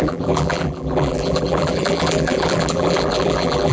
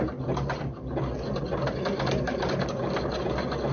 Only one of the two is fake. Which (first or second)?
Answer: first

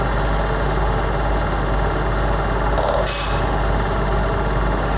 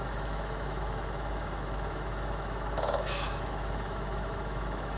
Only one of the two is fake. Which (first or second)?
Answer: second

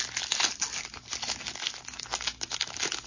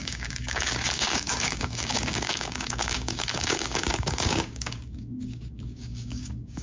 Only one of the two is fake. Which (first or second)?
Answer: second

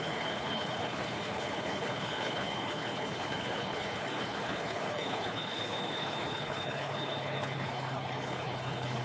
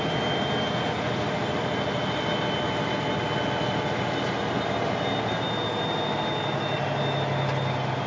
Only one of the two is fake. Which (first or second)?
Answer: first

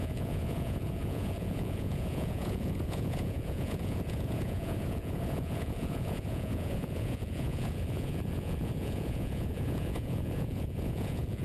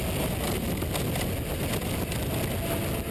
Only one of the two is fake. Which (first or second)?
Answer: first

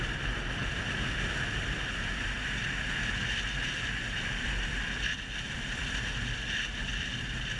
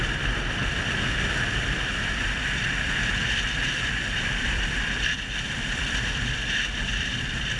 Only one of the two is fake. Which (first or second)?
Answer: second